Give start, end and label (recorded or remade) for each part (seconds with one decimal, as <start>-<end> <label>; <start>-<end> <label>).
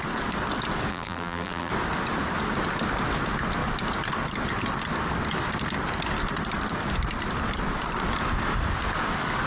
0.0-0.9 recorded; 0.9-1.7 remade; 1.7-9.5 recorded